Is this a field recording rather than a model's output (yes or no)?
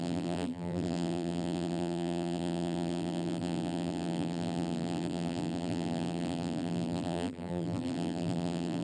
no